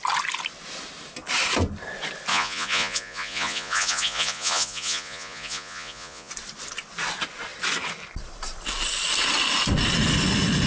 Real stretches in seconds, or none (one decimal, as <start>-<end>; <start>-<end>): 0.0-2.3; 6.3-10.7